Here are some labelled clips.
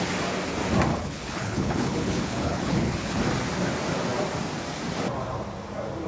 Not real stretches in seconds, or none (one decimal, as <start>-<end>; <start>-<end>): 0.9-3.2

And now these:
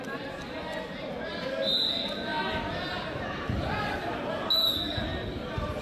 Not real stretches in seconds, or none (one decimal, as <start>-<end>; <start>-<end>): none

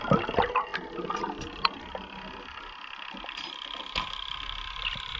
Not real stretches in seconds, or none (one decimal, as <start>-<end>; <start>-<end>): none